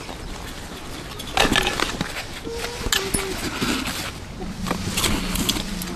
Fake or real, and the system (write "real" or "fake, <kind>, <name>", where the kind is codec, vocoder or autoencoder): real